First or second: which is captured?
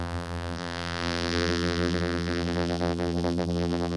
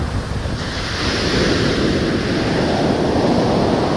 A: second